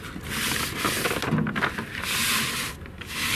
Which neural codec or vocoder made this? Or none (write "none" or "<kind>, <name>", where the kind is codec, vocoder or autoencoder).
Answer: none